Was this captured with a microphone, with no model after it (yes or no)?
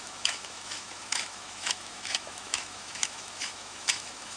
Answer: no